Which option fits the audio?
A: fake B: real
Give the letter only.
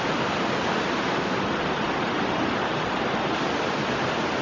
B